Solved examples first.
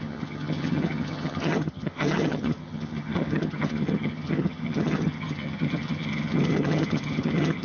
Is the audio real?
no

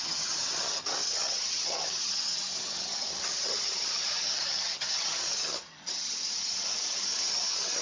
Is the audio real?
no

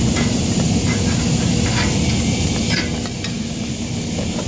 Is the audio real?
yes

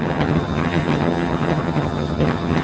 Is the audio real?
no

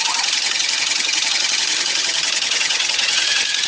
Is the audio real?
no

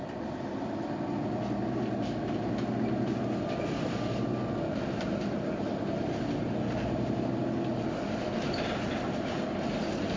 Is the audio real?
yes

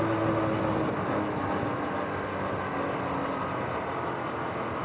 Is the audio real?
yes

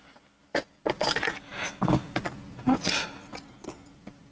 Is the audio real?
yes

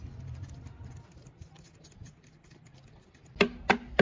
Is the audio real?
yes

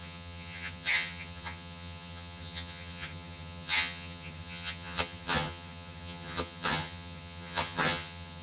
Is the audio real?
no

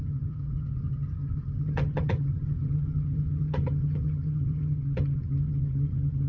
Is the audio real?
no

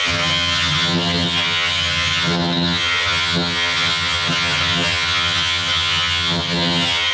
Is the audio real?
no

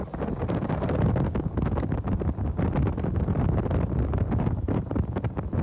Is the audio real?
yes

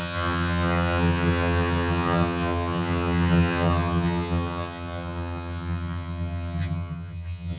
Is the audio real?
no